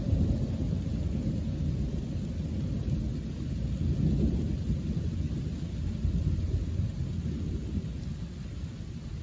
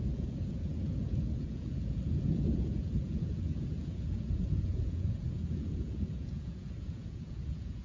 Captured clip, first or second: first